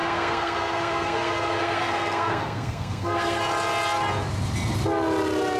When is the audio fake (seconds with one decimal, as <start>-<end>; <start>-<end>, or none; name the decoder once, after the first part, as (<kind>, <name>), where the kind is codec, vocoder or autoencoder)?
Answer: 0.0-3.4 (codec, SNAC)